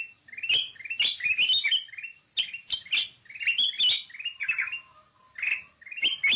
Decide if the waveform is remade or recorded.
recorded